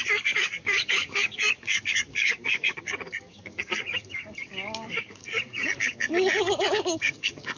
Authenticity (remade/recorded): remade